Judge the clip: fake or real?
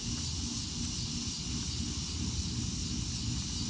real